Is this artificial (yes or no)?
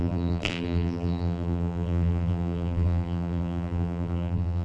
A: yes